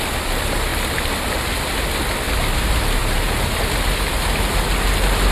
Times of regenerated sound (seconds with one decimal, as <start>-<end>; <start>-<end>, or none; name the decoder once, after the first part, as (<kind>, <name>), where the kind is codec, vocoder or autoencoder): none